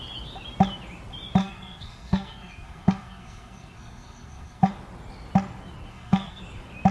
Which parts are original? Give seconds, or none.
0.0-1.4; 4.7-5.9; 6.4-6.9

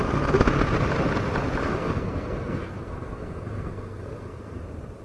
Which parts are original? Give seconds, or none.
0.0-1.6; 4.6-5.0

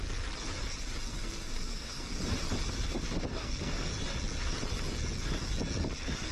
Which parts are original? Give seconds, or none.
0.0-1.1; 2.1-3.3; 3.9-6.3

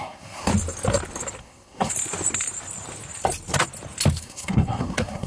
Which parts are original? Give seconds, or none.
0.5-1.4; 1.9-4.2

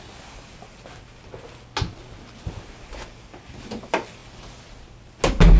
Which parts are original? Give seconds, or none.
0.0-5.6

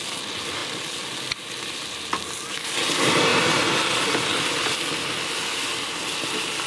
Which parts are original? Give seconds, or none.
0.0-6.7

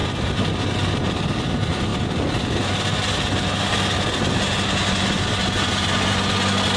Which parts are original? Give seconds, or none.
0.0-6.8

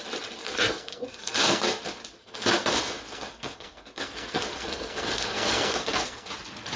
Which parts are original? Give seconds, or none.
0.0-0.4; 1.8-2.2; 6.3-6.8